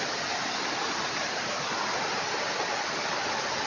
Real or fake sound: real